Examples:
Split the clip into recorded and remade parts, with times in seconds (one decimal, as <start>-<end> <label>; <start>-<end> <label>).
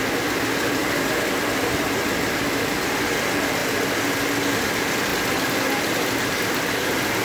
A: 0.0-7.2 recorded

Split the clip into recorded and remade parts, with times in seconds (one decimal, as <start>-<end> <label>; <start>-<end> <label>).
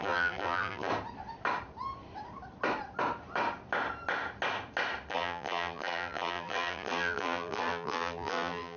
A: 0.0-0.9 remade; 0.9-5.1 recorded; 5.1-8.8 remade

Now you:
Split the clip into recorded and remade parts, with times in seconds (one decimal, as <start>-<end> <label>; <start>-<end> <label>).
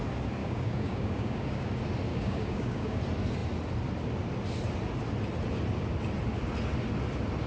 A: 0.0-0.4 recorded; 0.4-1.7 remade; 1.7-2.1 recorded; 2.1-3.0 remade; 3.0-7.5 recorded